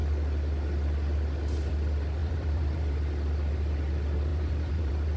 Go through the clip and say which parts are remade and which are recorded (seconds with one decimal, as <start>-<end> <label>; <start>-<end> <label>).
0.0-2.2 recorded; 2.2-2.9 remade; 2.9-4.3 recorded; 4.3-5.2 remade